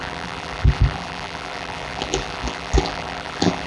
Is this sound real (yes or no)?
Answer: no